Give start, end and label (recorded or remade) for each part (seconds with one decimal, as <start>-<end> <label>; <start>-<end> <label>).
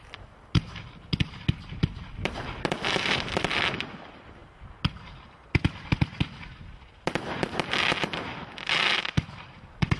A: 0.0-10.0 recorded